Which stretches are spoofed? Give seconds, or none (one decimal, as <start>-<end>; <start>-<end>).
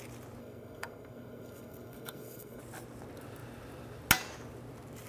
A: 0.4-2.6